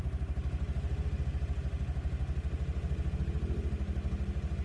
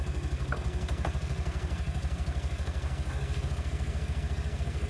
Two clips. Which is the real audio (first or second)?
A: first